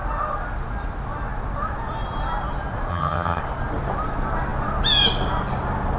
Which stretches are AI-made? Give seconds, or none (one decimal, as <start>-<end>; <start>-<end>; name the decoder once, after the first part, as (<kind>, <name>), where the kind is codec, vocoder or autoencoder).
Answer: 2.9-3.4 (vocoder, HiFi-GAN)